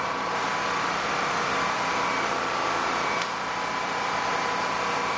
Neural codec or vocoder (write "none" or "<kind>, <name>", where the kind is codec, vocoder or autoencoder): none